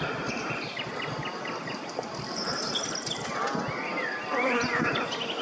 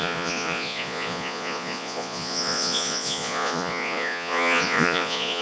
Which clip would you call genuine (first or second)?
first